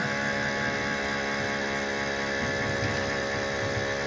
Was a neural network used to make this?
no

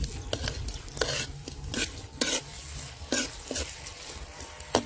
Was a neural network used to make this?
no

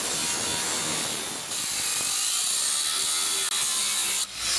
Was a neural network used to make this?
no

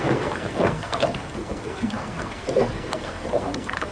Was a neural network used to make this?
yes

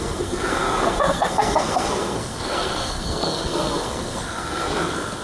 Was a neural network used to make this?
yes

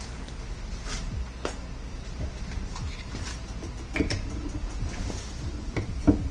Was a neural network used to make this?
no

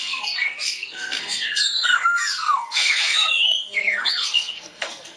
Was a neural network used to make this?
yes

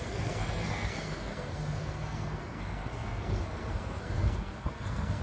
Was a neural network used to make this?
yes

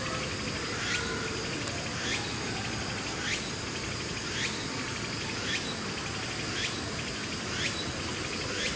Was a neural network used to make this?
no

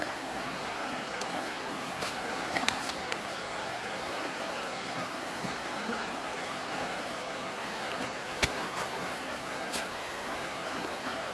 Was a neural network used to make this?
yes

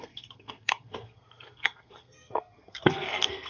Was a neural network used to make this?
yes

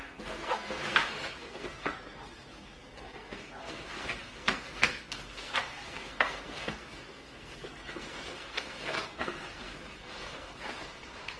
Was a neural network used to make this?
yes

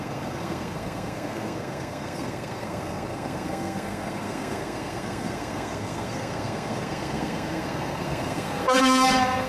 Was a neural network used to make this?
yes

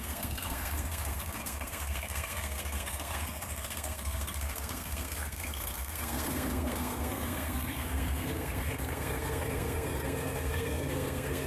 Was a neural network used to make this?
yes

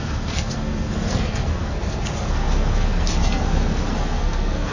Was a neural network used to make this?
yes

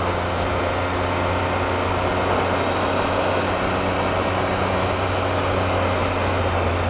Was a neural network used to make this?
no